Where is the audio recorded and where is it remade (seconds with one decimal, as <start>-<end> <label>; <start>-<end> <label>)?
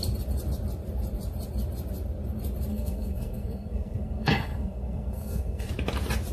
0.0-2.7 recorded; 2.7-5.7 remade; 5.7-6.3 recorded